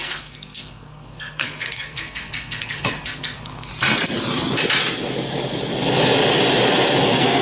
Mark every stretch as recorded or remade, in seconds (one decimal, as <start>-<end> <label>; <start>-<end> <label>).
0.0-3.7 remade; 3.7-7.0 recorded; 7.0-7.4 remade

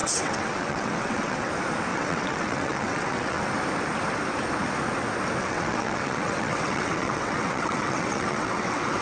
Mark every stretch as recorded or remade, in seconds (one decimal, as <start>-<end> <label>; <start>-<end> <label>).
0.0-1.5 remade; 1.5-1.9 recorded; 1.9-3.4 remade; 3.4-5.4 recorded; 5.4-9.0 remade

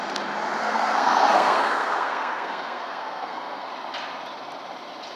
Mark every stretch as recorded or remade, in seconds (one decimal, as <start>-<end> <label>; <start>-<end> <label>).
0.0-0.6 recorded; 0.6-3.7 remade; 3.7-5.2 recorded

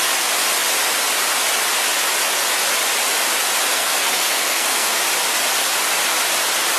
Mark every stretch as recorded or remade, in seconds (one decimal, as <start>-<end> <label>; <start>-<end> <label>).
0.0-3.7 recorded; 3.7-4.9 remade; 4.9-6.8 recorded

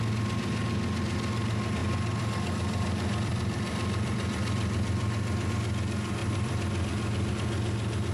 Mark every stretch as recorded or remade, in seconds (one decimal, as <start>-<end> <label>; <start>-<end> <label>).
0.0-1.8 recorded; 1.8-5.5 remade; 5.5-6.2 recorded; 6.2-7.3 remade; 7.3-8.1 recorded

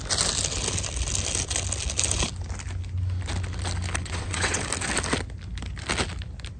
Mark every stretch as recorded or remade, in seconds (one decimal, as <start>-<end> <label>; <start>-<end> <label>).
0.0-4.0 recorded; 4.0-4.6 remade; 4.6-6.6 recorded